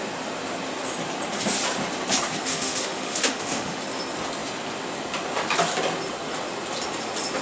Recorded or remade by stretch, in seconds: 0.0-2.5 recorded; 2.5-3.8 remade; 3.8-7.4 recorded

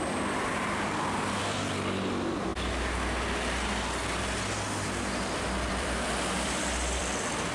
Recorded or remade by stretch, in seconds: 0.0-2.5 remade; 2.5-5.7 recorded; 5.7-7.5 remade